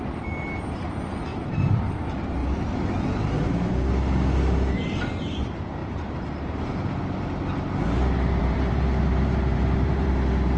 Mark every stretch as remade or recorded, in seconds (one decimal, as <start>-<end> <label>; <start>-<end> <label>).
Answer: 0.0-1.3 recorded; 1.3-1.9 remade; 1.9-2.4 recorded; 2.4-3.9 remade; 3.9-5.8 recorded; 5.8-6.7 remade; 6.7-8.4 recorded; 8.4-10.1 remade; 10.1-10.6 recorded